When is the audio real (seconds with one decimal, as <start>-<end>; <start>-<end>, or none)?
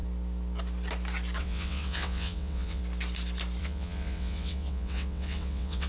0.0-1.4; 2.8-3.6